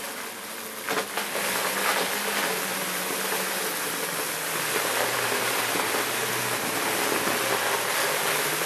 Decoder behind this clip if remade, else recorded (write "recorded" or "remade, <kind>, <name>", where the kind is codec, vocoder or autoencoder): recorded